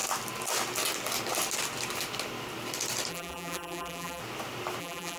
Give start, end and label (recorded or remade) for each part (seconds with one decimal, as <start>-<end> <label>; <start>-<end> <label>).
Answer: 0.0-3.1 recorded; 3.1-4.2 remade; 4.2-4.8 recorded; 4.8-5.2 remade